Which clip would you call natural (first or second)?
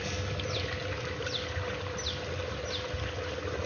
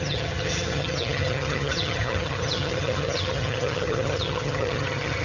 first